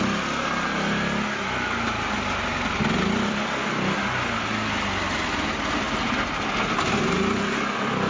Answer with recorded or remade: recorded